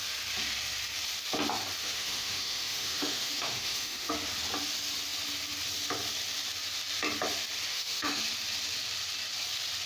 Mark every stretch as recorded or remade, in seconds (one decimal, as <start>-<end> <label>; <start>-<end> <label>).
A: 0.0-1.8 recorded; 1.8-4.1 remade; 4.1-7.7 recorded; 7.7-8.2 remade; 8.2-9.9 recorded

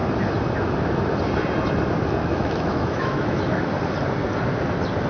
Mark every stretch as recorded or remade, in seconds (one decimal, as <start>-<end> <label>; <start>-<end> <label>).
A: 0.0-2.2 recorded; 2.2-3.7 remade; 3.7-5.1 recorded

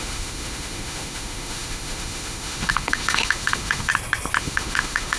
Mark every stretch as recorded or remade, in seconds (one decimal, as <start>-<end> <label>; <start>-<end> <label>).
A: 0.0-3.9 remade; 3.9-4.4 recorded; 4.4-5.2 remade

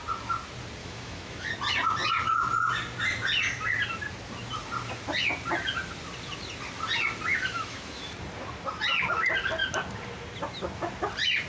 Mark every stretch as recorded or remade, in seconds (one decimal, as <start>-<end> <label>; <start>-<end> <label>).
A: 0.0-0.8 recorded; 0.8-1.5 remade; 1.5-7.3 recorded; 7.3-8.1 remade; 8.1-11.5 recorded

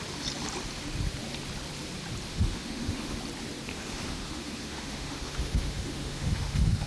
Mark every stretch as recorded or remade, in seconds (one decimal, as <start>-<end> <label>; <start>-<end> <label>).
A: 0.0-2.3 recorded; 2.3-3.2 remade; 3.2-3.7 recorded; 3.7-6.9 remade